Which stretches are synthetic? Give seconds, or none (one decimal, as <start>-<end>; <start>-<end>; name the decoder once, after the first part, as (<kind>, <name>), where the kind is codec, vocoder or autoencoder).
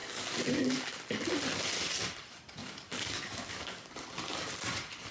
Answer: 0.0-1.1 (codec, DAC); 2.6-3.9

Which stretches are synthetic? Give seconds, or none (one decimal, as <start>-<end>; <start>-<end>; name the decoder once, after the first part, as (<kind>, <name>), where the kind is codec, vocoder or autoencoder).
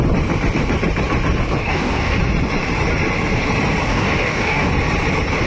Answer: 1.6-2.2 (codec, DAC); 3.9-4.7